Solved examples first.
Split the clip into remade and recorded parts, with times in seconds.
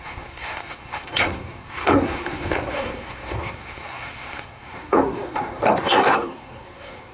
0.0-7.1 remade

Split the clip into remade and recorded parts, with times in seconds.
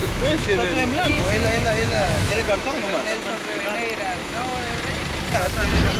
0.0-3.6 remade; 3.6-4.2 recorded; 4.2-4.8 remade; 4.8-6.0 recorded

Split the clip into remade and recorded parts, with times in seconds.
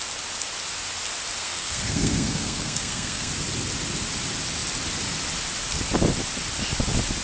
0.0-1.4 recorded; 1.4-3.3 remade; 3.3-7.2 recorded